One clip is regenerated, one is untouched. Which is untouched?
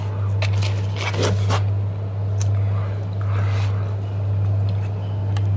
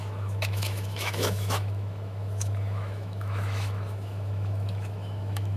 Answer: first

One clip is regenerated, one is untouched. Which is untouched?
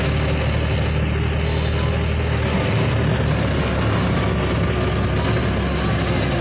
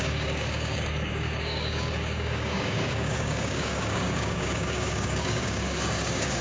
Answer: first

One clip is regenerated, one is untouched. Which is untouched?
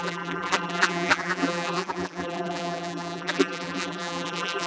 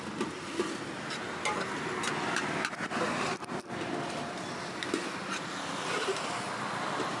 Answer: second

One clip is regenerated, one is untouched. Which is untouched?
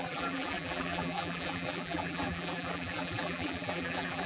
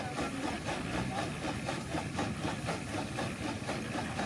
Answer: second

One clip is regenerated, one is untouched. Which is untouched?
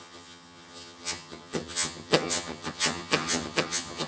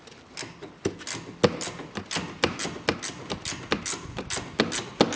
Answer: second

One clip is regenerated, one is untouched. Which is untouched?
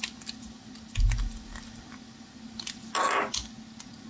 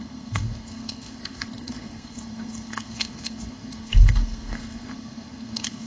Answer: first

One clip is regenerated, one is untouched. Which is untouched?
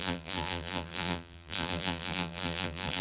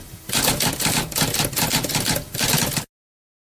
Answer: second